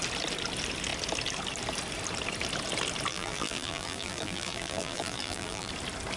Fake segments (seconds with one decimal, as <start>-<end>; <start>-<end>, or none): 3.1-5.7